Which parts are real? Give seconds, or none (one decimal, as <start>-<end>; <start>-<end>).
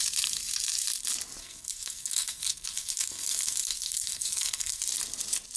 0.0-1.4; 4.8-5.6